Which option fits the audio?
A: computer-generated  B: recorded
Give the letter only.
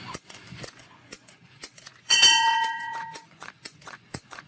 A